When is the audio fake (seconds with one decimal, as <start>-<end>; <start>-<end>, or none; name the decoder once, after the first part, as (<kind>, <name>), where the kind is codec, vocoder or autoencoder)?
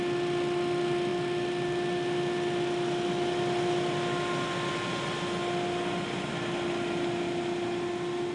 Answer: none